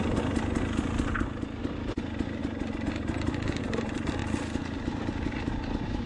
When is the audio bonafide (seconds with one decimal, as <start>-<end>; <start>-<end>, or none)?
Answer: 0.0-6.1